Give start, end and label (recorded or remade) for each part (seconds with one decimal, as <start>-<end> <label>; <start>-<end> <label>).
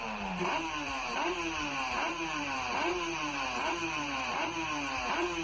0.0-5.4 remade